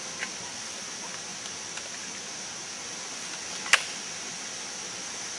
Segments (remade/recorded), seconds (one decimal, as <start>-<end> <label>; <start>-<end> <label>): 0.0-5.4 recorded